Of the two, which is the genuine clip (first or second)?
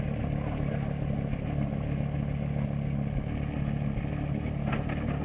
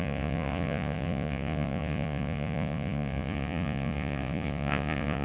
first